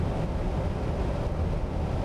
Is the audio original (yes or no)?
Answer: yes